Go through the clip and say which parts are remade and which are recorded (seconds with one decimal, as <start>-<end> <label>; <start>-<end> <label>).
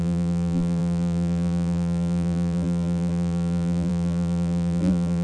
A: 0.0-5.2 remade